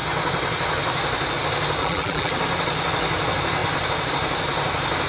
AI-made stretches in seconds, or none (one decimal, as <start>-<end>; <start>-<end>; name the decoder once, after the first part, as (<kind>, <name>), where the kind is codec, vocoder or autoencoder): 1.8-2.3 (vocoder, BigVGAN v2)